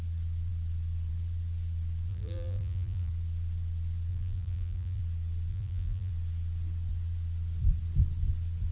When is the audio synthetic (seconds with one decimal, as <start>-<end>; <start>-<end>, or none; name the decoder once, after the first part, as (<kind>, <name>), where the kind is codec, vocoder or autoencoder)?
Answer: 2.1-3.1 (vocoder, BigVGAN v2); 4.1-5.0; 5.5-6.1